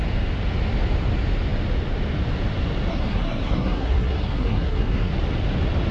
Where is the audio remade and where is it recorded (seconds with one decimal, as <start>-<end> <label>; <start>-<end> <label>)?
0.0-2.9 recorded; 2.9-5.1 remade; 5.1-5.9 recorded